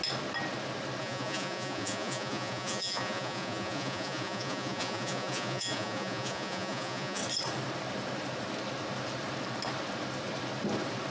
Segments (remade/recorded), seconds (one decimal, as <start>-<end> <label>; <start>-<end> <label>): 0.0-1.0 recorded; 1.0-7.2 remade; 7.2-11.1 recorded

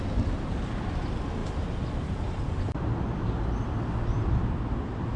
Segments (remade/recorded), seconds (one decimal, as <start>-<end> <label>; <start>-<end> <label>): 0.0-5.2 recorded